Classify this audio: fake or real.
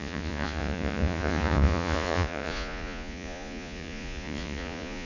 fake